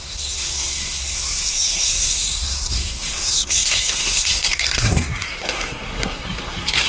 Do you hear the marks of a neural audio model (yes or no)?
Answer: yes